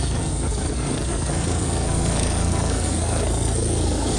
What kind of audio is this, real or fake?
fake